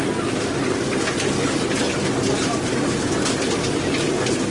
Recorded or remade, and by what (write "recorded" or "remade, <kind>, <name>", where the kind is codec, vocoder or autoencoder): recorded